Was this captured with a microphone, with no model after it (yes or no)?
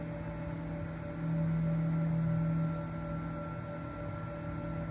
yes